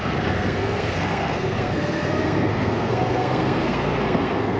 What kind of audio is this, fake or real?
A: fake